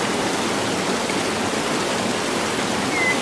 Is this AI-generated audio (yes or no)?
no